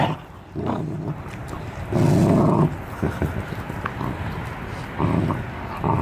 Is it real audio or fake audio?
real